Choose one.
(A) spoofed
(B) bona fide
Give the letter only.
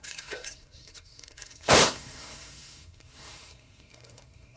A